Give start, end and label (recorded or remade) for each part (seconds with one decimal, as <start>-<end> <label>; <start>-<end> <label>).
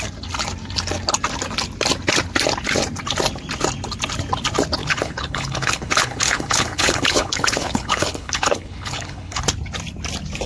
0.0-4.8 recorded; 4.8-9.4 remade; 9.4-10.5 recorded